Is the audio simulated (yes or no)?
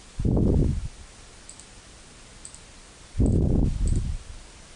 no